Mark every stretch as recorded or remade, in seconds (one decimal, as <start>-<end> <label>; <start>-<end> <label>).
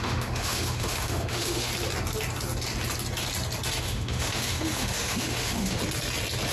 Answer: 0.0-1.7 remade; 1.7-3.8 recorded; 3.8-5.8 remade; 5.8-6.5 recorded